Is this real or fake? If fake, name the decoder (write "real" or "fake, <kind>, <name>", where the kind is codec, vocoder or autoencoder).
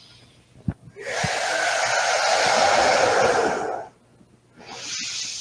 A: real